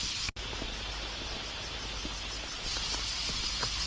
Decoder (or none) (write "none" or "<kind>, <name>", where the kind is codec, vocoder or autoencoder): none